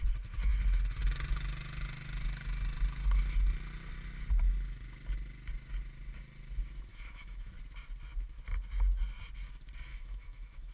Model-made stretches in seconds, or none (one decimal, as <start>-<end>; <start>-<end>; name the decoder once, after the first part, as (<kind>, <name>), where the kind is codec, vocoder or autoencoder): 6.9-7.5 (autoencoder, DAC-VAE); 9.9-10.7

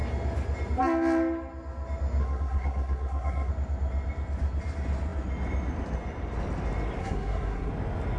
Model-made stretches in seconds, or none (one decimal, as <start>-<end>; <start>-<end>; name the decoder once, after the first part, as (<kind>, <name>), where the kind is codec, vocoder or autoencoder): 2.2-3.5 (codec, SNAC); 7.0-7.7